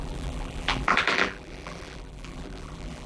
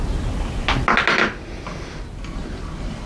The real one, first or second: second